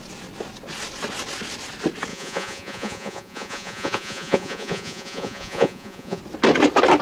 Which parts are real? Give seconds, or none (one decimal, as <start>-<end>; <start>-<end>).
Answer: 0.0-2.1; 6.2-7.0